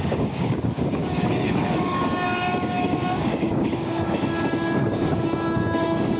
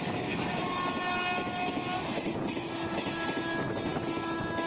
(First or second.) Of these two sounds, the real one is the second